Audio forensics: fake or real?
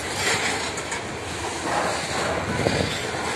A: real